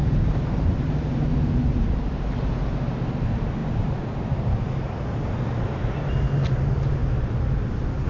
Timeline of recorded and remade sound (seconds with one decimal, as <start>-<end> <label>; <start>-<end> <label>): 0.0-2.2 remade; 2.2-3.6 recorded; 3.6-5.9 remade; 5.9-8.1 recorded